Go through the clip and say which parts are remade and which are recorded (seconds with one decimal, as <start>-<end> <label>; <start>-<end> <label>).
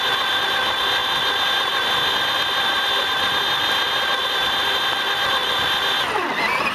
0.0-6.7 recorded